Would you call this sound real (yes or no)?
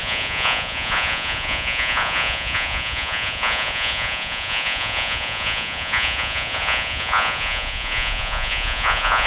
no